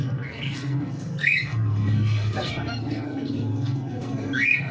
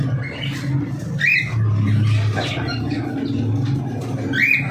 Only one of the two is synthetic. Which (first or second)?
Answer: first